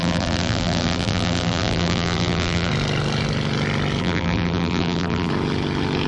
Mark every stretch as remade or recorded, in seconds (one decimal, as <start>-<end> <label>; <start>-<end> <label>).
0.0-2.7 remade; 2.7-4.0 recorded; 4.0-5.3 remade; 5.3-6.1 recorded

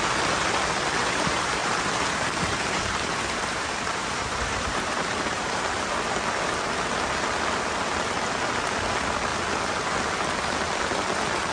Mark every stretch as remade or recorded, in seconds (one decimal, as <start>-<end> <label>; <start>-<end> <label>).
0.0-1.0 recorded; 1.0-5.5 remade; 5.5-11.5 recorded